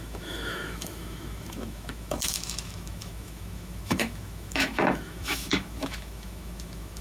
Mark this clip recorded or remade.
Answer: remade